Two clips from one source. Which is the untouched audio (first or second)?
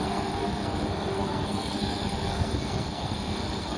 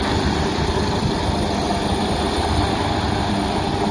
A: second